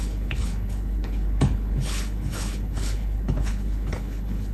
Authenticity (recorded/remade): remade